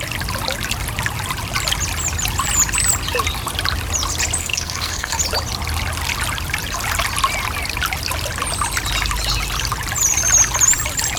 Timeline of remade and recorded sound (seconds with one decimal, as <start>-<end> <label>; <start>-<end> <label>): 0.0-4.4 recorded; 4.4-5.2 remade; 5.2-11.2 recorded